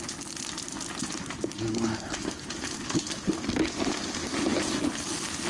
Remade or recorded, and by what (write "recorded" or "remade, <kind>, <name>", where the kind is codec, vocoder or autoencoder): recorded